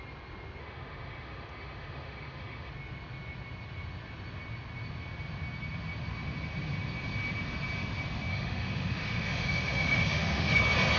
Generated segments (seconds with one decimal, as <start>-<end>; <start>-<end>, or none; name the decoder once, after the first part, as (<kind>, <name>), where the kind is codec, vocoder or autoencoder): 0.6-2.7 (autoencoder, DAC-VAE); 8.3-10.6

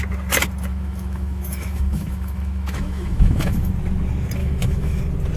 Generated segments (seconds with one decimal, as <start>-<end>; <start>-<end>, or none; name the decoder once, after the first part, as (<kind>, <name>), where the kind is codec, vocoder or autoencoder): 0.7-3.7 (autoencoder, DAC-VAE); 4.4-5.0

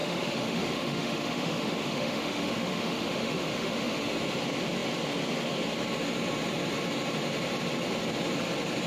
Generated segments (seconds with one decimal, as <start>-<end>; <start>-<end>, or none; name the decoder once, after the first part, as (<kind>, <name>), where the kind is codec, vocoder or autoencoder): 0.0-4.1 (autoencoder, DAC-VAE)

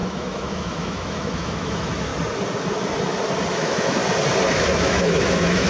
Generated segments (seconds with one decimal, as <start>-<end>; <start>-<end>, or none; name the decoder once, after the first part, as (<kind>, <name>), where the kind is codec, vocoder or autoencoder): 0.0-2.1 (autoencoder, DAC-VAE); 3.5-4.0; 4.5-5.7

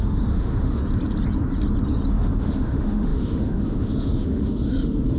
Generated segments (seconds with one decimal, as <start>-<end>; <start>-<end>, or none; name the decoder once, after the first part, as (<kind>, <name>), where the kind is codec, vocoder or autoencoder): 0.0-0.8 (autoencoder, DAC-VAE); 2.1-5.2

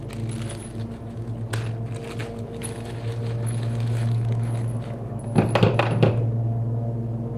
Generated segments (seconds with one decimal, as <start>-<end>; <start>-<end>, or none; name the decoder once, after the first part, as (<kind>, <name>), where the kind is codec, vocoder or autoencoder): 0.6-1.3 (autoencoder, DAC-VAE); 2.2-5.1

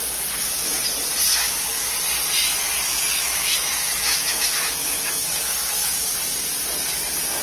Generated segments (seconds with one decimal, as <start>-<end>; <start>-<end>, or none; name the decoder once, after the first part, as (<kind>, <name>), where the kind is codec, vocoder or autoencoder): 1.3-1.9 (autoencoder, DAC-VAE); 2.9-6.0

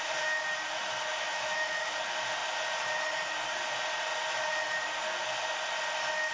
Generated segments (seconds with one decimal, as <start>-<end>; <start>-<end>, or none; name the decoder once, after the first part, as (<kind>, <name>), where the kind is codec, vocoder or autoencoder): 1.1-2.0 (autoencoder, DAC-VAE)